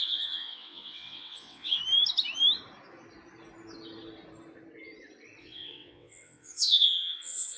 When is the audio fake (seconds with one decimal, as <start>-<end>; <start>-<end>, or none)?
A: 0.0-1.8; 5.4-7.6